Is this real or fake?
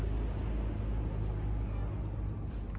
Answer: real